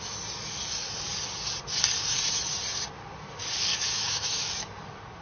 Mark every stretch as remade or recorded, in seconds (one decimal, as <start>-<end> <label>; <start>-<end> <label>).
0.0-3.7 recorded; 3.7-4.5 remade; 4.5-5.2 recorded